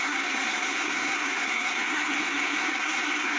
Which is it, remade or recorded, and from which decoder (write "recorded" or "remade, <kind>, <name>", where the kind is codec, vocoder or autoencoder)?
remade, codec, SNAC